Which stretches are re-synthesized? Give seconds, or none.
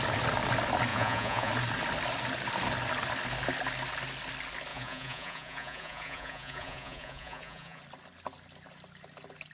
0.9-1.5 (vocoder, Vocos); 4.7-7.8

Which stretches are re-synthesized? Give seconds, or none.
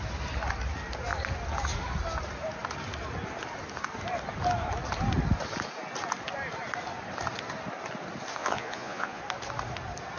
8.4-9.2 (vocoder, Vocos)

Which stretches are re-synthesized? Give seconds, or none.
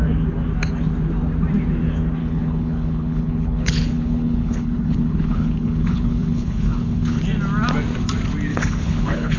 2.2-7.2 (codec, HILCodec); 8.5-9.4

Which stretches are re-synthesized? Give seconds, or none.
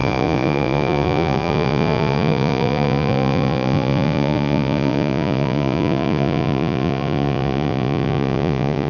0.0-8.9 (vocoder, Vocos)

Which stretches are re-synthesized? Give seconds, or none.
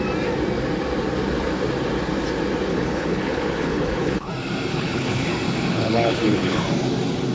2.7-4.3 (codec, HILCodec); 4.7-5.3; 5.7-6.6